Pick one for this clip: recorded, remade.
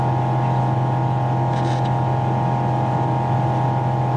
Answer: recorded